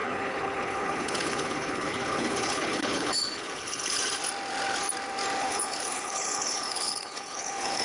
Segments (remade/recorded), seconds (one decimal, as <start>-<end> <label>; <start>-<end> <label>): 0.0-4.0 remade; 4.0-5.4 recorded; 5.4-7.8 remade